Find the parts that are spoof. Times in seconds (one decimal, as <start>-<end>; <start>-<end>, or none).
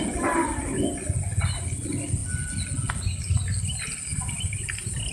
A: 4.1-5.1